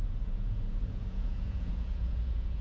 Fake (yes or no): yes